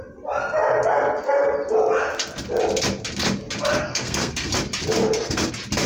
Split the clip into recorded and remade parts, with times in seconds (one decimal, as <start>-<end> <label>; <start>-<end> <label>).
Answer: 0.0-3.8 recorded; 3.8-4.5 remade; 4.5-5.0 recorded; 5.0-5.5 remade; 5.5-5.9 recorded